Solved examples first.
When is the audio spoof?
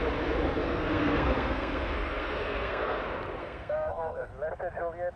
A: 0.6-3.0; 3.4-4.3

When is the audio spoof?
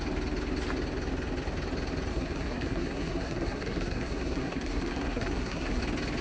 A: 2.1-5.8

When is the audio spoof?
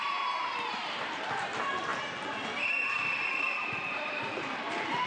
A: 0.0-1.9; 2.9-5.1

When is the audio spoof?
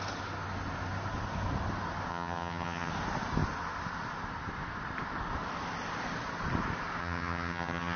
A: 2.1-2.9; 7.0-8.0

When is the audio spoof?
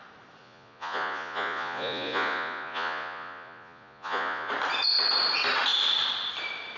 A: 0.4-4.5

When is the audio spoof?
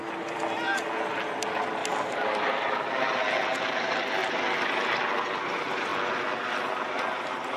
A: 1.8-2.9; 4.2-5.1